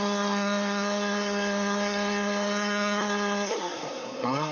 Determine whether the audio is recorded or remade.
remade